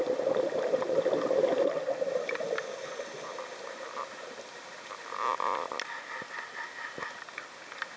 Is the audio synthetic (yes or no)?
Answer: no